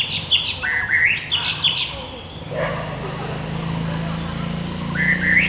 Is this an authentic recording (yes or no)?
yes